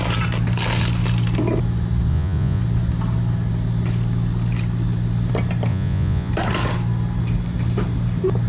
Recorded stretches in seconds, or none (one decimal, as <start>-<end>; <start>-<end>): 0.0-2.1; 2.6-5.7; 6.3-8.5